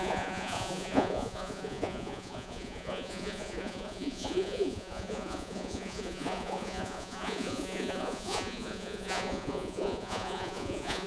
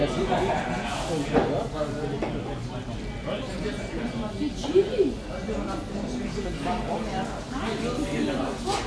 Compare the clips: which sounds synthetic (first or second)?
first